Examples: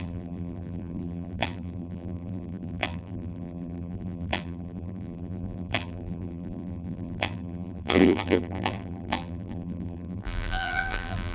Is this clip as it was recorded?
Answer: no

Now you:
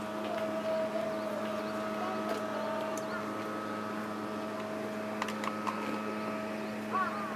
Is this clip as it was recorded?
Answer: yes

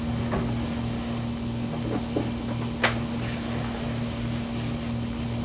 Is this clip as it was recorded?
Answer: yes